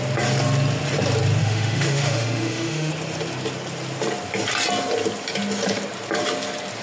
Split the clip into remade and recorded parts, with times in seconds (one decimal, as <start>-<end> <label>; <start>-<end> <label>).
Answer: 0.0-1.4 recorded; 1.4-2.9 remade; 2.9-6.8 recorded